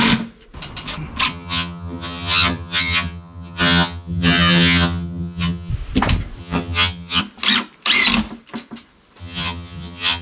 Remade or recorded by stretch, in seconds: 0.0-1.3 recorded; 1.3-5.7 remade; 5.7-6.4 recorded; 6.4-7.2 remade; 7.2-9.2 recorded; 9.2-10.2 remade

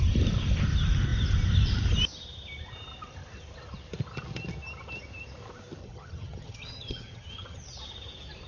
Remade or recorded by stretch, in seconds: 0.0-5.8 recorded; 5.8-7.8 remade; 7.8-8.5 recorded